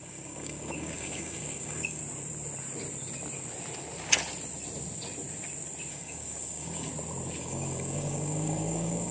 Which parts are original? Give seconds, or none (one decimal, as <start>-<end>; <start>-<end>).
2.0-5.9; 6.9-7.4